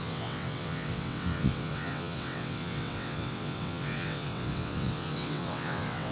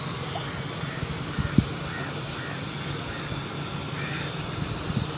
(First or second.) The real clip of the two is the second